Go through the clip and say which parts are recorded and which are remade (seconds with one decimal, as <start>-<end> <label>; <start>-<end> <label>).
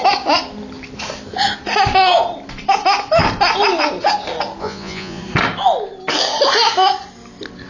0.0-4.6 recorded; 4.6-5.2 remade; 5.2-7.7 recorded